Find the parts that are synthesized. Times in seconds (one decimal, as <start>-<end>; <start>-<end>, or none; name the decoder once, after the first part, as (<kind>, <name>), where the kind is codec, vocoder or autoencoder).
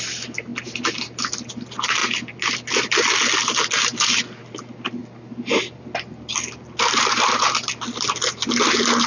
none